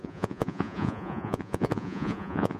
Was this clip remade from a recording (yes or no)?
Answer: yes